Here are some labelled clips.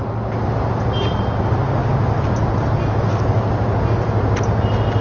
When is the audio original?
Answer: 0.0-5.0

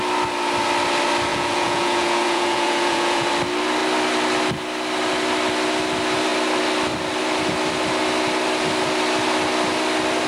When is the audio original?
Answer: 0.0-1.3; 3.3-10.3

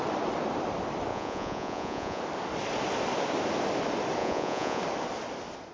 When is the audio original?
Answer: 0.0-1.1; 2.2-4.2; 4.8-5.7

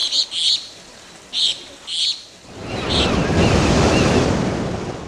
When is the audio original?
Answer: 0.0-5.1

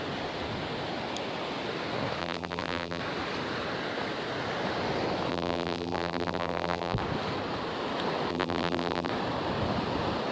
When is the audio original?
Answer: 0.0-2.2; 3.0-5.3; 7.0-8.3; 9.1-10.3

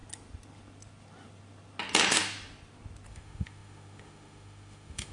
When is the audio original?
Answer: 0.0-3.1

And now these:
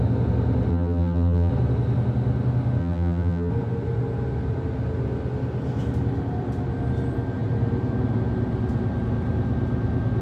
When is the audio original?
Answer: 0.0-0.7; 1.5-2.8; 3.5-10.2

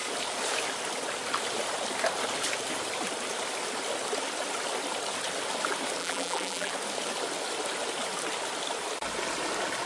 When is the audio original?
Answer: 0.0-6.0; 6.7-9.9